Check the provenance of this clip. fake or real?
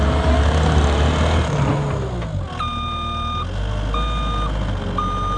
real